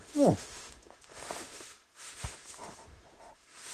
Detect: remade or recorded remade